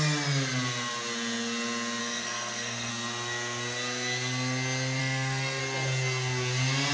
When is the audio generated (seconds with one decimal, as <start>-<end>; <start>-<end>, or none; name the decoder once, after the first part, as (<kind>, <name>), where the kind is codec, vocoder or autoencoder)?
2.0-2.9 (codec, SNAC); 5.0-5.6